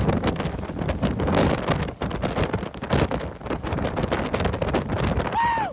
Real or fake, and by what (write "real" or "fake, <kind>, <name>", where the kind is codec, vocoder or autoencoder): real